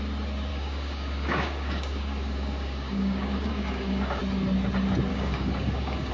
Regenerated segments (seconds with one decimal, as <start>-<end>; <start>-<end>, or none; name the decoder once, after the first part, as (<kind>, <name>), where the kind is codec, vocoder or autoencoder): 0.5-4.2 (codec, DAC); 5.1-6.1